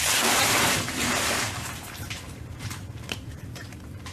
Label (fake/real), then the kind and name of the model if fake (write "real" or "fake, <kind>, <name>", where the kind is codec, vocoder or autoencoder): fake, vocoder, BigVGAN v2